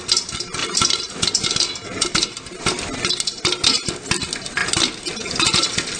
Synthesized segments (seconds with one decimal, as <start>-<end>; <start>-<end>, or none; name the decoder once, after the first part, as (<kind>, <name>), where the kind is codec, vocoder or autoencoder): 0.6-1.7 (vocoder, BigVGAN v2)